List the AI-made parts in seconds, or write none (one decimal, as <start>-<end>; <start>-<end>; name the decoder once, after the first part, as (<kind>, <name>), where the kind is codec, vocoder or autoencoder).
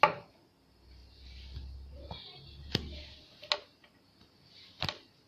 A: none